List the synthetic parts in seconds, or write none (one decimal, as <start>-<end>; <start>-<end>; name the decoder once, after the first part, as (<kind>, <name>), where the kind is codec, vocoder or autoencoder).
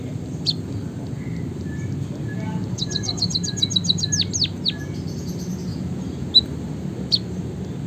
2.6-3.3 (vocoder, BigVGAN v2)